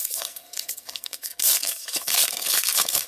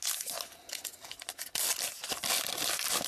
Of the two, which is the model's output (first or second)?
first